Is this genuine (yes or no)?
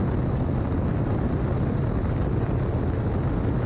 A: yes